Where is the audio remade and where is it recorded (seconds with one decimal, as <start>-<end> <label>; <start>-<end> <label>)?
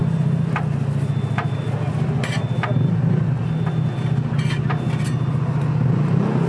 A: 0.0-6.5 recorded